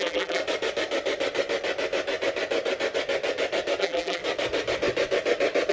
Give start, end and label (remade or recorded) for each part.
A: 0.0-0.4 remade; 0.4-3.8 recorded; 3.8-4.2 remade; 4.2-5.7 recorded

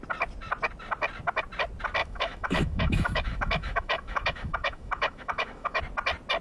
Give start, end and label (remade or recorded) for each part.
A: 0.0-2.0 recorded; 2.0-5.8 remade; 5.8-6.4 recorded